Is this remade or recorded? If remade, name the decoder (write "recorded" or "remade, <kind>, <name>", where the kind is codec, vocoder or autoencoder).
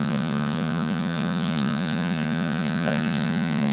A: remade, vocoder, Vocos